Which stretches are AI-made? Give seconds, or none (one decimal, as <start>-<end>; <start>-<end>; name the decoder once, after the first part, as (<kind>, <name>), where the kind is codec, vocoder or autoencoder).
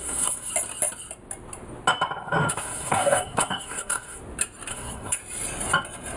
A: 0.0-0.5 (codec, SNAC); 2.5-4.2; 4.7-5.2